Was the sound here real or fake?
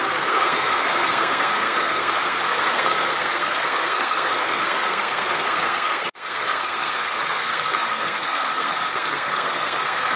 fake